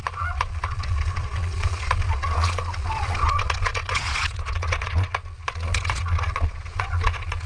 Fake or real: fake